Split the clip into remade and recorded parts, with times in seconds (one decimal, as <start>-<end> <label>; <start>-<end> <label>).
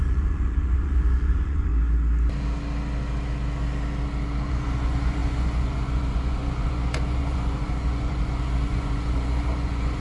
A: 0.0-1.7 remade; 1.7-4.5 recorded; 4.5-10.0 remade